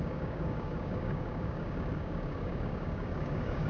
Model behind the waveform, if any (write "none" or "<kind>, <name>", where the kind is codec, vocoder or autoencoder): codec, DAC